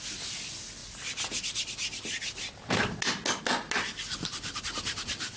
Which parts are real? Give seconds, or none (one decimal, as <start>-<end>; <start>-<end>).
0.0-5.4